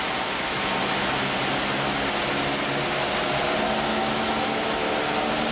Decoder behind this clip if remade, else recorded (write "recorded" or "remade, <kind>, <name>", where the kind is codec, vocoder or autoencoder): recorded